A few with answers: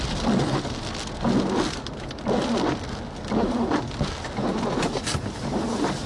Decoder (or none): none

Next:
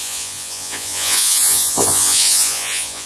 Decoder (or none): vocoder, Vocos